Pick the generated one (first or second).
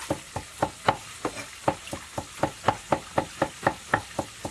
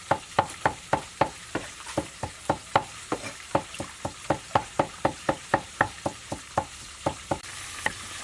second